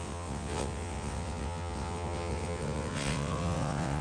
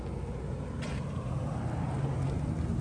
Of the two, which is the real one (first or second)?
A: second